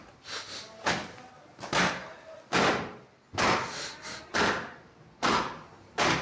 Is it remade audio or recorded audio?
recorded